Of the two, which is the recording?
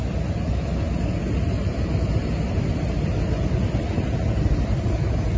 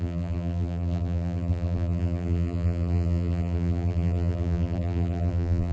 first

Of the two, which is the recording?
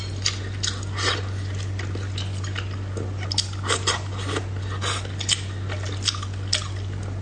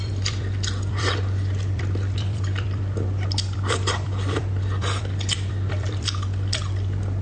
first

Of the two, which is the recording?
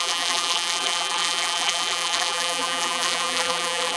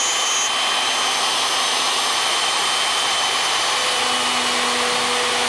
second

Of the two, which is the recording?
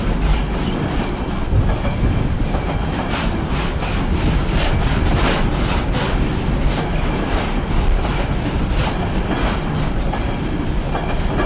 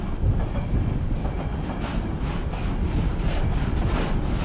first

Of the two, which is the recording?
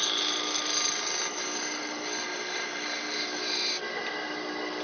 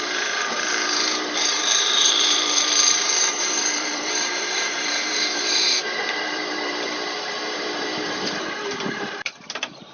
first